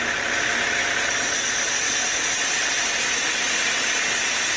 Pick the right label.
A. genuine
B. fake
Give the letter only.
A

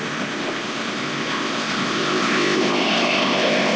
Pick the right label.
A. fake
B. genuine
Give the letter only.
A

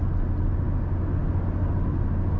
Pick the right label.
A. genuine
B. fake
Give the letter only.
A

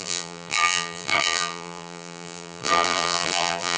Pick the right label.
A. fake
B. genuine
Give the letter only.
A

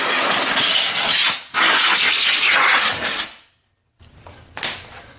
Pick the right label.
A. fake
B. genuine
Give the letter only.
B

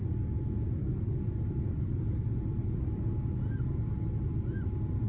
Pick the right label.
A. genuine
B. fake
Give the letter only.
A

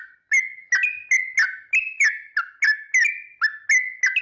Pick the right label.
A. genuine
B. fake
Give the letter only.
A